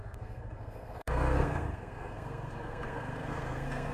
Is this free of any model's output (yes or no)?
no